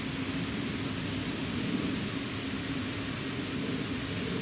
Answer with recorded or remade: recorded